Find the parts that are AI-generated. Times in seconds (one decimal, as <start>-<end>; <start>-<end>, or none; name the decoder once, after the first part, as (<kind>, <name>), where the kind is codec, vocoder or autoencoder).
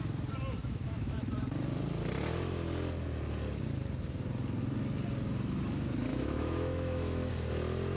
0.6-1.2 (autoencoder, DAC-VAE); 6.1-7.3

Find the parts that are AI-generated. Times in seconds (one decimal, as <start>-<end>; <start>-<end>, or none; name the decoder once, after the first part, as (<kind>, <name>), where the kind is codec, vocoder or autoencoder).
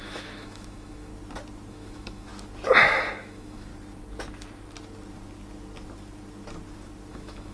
0.0-1.1 (autoencoder, DAC-VAE); 1.7-2.3; 3.2-3.7; 7.1-7.5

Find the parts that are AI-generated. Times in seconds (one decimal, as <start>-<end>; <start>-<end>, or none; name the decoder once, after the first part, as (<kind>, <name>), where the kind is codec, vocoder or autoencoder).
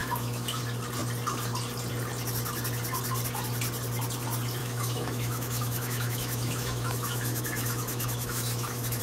0.0-0.6 (autoencoder, DAC-VAE); 4.6-9.0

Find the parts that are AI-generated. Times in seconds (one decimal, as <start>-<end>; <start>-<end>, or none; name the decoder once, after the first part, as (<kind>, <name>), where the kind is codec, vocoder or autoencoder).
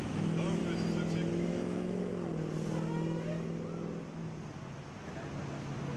0.0-0.6 (autoencoder, DAC-VAE); 1.3-2.1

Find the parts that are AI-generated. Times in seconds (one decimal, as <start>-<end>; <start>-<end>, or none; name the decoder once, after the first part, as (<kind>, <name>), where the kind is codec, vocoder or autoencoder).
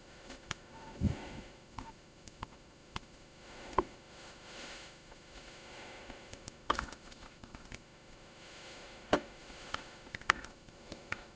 0.0-11.4 (autoencoder, DAC-VAE)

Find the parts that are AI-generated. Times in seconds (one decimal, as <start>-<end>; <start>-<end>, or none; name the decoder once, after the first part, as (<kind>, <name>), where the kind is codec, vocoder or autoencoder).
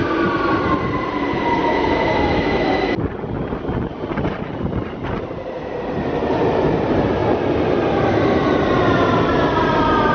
1.6-2.7 (autoencoder, DAC-VAE)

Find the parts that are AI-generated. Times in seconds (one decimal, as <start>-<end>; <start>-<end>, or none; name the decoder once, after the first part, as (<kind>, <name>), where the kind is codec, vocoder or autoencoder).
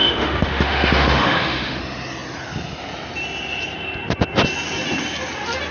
0.0-1.8 (autoencoder, DAC-VAE)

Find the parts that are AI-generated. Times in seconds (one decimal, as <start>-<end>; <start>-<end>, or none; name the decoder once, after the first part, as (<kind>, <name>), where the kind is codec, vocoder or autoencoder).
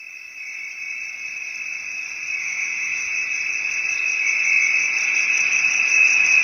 2.4-3.1 (autoencoder, DAC-VAE)